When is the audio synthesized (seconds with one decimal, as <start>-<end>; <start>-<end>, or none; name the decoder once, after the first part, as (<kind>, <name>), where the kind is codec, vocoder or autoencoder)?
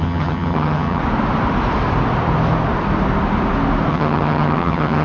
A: 0.0-1.0 (vocoder, HiFi-GAN); 3.9-5.0